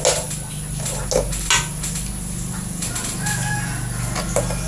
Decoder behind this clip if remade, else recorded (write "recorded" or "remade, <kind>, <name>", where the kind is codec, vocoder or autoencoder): recorded